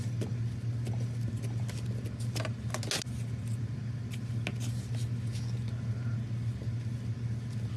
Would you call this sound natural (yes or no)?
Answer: yes